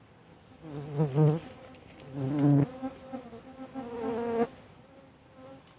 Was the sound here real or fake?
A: real